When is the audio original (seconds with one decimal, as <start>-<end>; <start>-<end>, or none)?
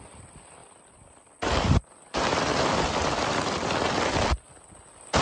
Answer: none